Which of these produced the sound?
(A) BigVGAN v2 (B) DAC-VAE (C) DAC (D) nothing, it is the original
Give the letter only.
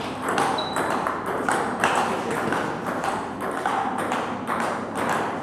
A